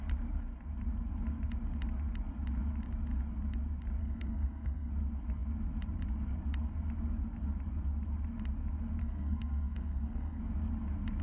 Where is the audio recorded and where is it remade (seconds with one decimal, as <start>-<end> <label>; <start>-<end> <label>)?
0.0-4.0 recorded; 4.0-4.9 remade; 4.9-9.0 recorded; 9.0-10.4 remade; 10.4-11.2 recorded